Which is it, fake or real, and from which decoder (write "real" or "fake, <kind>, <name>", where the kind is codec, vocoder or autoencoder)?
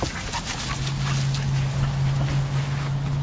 real